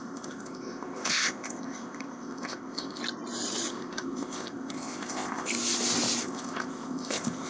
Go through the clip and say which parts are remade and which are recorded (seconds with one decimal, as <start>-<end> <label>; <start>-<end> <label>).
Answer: 0.0-3.0 remade; 3.0-3.7 recorded; 3.7-5.5 remade; 5.5-6.2 recorded; 6.2-7.5 remade

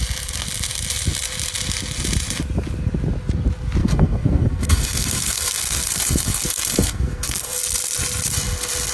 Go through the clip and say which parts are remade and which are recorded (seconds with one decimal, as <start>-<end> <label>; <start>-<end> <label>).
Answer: 0.0-3.8 recorded; 3.8-7.6 remade; 7.6-8.9 recorded

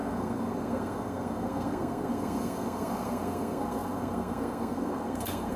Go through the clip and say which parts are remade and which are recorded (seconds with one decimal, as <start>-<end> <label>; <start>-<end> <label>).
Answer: 0.0-5.6 remade

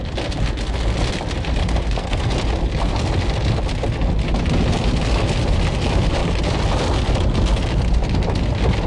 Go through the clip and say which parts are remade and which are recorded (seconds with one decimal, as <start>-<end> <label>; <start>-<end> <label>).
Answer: 0.0-1.6 recorded; 1.6-2.3 remade; 2.3-8.9 recorded

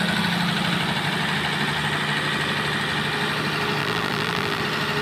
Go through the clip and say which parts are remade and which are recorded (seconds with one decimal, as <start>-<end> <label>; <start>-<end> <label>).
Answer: 0.0-3.8 recorded; 3.8-4.6 remade; 4.6-5.0 recorded

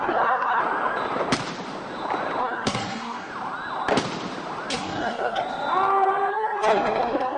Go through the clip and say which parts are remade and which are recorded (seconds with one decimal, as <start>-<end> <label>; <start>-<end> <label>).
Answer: 0.0-0.6 remade; 0.6-2.4 recorded; 2.4-3.3 remade; 3.3-4.7 recorded; 4.7-5.4 remade; 5.4-6.3 recorded; 6.3-7.4 remade

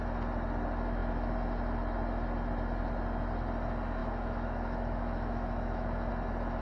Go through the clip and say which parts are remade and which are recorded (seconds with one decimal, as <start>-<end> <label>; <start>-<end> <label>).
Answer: 0.0-4.0 recorded; 4.0-6.1 remade; 6.1-6.6 recorded